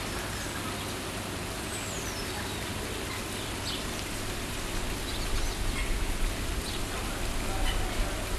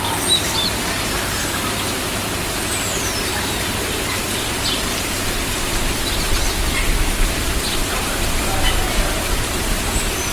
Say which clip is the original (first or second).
first